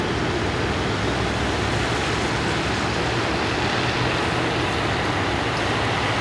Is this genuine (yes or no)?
yes